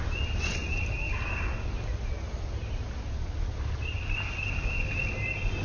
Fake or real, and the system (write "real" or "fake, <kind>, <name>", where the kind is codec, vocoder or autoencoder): real